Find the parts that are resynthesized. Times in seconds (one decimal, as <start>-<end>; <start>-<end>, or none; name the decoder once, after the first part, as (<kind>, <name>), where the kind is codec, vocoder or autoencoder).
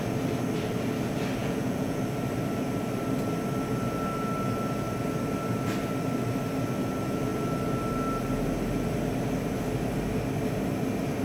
1.4-2.0 (vocoder, Vocos)